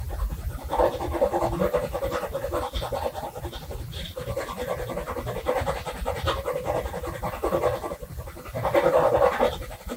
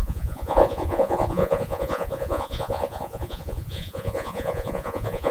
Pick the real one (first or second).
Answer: first